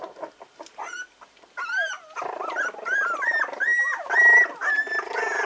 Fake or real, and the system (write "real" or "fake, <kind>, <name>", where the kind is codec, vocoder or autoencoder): real